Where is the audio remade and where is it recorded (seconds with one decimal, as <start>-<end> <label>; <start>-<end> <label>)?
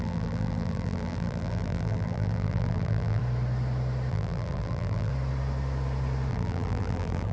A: 0.0-3.2 remade; 3.2-4.1 recorded; 4.1-5.1 remade; 5.1-6.3 recorded; 6.3-7.3 remade